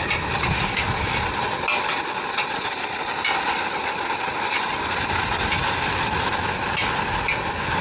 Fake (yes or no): no